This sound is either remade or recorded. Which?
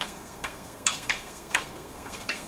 remade